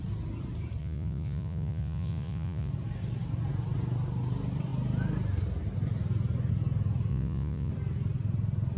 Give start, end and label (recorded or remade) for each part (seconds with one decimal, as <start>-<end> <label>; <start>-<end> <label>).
0.0-0.8 recorded; 0.8-2.7 remade; 2.7-7.1 recorded; 7.1-7.7 remade; 7.7-8.8 recorded